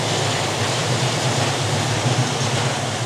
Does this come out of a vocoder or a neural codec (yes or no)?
no